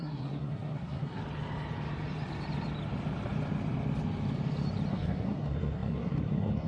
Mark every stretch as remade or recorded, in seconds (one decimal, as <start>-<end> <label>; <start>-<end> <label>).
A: 0.0-1.2 remade; 1.2-4.9 recorded; 4.9-6.7 remade

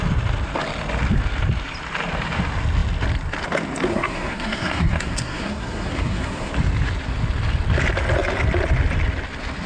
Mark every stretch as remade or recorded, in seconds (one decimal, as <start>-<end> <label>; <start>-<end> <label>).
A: 0.0-3.9 recorded; 3.9-6.5 remade; 6.5-9.7 recorded

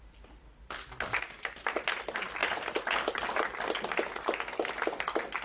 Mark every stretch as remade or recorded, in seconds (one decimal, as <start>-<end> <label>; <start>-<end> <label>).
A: 0.0-5.4 recorded

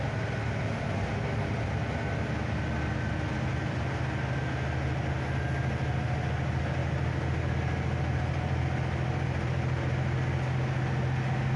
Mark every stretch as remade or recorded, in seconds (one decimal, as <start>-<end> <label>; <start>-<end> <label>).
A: 0.0-11.6 recorded

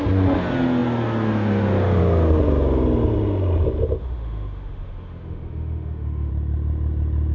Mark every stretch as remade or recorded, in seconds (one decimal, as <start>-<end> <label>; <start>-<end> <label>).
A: 0.0-4.0 recorded; 4.0-6.3 remade; 6.3-7.3 recorded

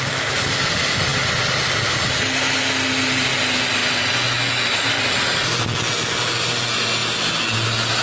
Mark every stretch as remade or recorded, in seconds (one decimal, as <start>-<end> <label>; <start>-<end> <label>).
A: 0.0-8.0 recorded

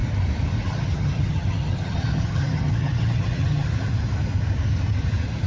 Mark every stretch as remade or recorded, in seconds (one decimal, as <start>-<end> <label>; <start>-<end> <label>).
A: 0.0-0.7 recorded; 0.7-3.7 remade; 3.7-5.5 recorded